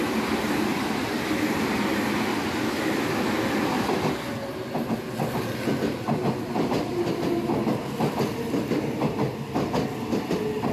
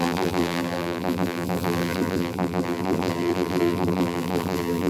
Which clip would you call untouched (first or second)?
first